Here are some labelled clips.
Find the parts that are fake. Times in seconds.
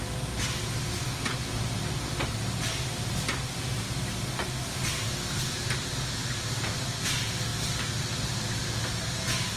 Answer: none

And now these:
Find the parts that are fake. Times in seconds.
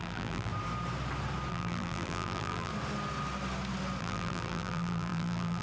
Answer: 0.0-0.5 (vocoder, BigVGAN v2); 1.5-2.7; 4.0-5.6